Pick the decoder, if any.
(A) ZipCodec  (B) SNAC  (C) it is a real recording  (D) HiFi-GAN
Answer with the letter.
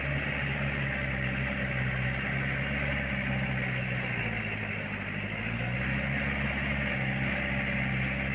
C